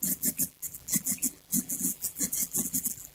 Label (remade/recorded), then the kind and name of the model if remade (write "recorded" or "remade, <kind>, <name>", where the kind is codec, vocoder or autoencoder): remade, vocoder, BigVGAN v2